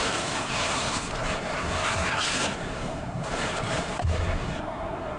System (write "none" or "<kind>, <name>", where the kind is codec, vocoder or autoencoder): codec, SNAC